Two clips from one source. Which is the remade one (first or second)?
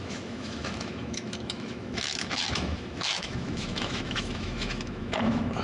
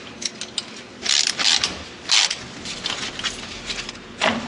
first